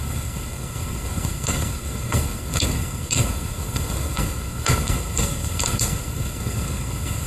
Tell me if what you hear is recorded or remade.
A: remade